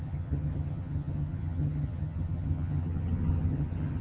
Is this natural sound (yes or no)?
no